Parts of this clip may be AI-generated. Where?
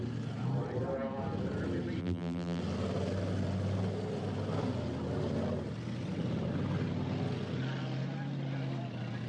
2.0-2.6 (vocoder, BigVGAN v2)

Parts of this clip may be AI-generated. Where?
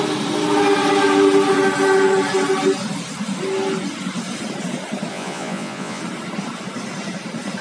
5.1-6.0 (vocoder, Vocos)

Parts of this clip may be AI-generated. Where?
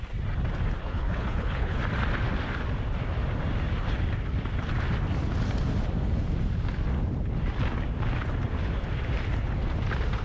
0.8-1.8 (codec, HILCodec)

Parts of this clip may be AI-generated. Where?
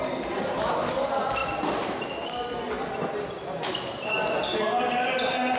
none